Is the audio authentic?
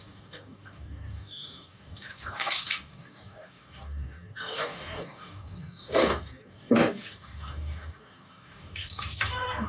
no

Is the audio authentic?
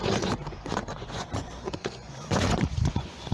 no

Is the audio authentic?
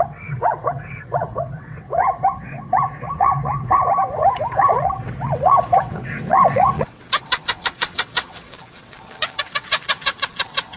no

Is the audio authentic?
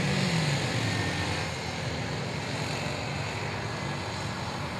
yes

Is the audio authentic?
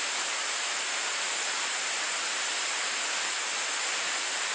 yes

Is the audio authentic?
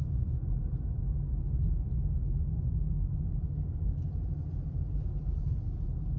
yes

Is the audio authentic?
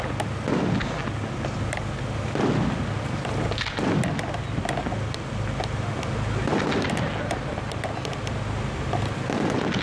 yes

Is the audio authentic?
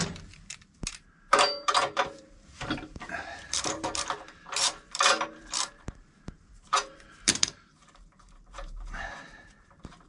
no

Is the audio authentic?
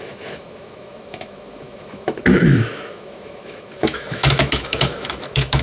no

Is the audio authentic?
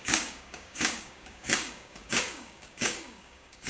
no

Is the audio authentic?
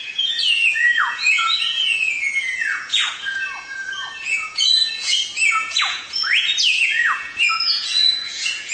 no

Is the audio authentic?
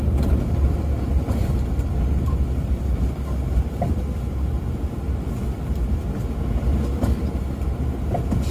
yes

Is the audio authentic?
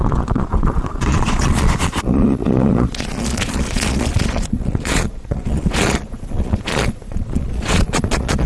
no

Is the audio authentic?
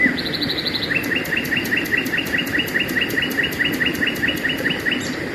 yes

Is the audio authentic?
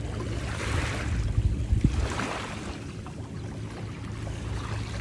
yes